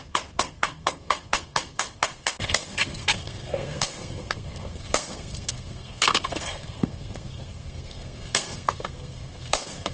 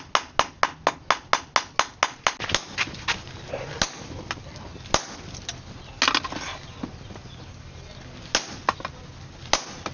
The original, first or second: second